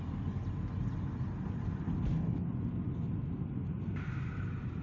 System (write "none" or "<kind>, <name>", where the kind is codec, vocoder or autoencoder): none